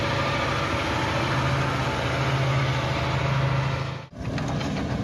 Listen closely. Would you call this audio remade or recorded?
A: recorded